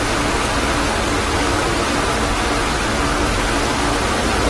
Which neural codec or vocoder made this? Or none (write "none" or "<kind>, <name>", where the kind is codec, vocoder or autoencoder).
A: none